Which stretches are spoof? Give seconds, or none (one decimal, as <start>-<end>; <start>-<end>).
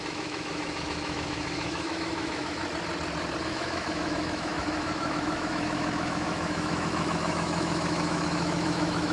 0.0-2.6; 3.4-9.1